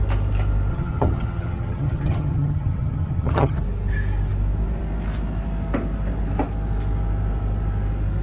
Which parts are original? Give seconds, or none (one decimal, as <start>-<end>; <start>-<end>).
0.0-0.7; 3.6-8.2